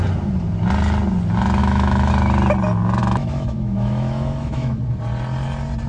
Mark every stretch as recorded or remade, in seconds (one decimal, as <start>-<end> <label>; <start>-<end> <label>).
0.0-1.6 recorded; 1.6-2.1 remade; 2.1-3.0 recorded; 3.0-4.8 remade; 4.8-5.9 recorded